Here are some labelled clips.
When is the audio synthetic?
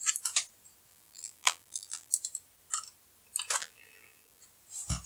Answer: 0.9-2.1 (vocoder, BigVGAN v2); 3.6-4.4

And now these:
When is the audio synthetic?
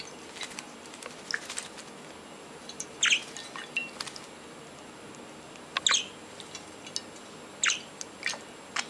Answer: none